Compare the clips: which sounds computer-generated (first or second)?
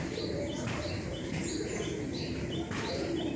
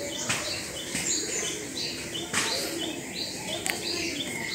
first